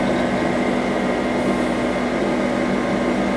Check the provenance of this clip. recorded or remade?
recorded